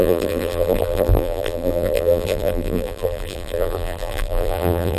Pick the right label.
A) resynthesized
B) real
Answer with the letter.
A